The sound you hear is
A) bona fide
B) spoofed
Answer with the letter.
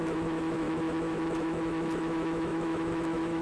B